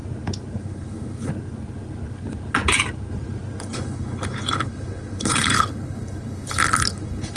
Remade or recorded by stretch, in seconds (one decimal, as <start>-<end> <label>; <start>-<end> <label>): 0.0-0.6 recorded; 0.6-1.3 remade; 1.3-3.6 recorded; 3.6-7.4 remade